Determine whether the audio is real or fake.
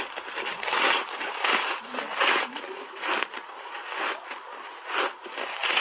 real